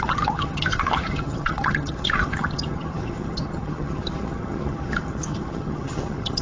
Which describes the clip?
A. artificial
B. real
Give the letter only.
A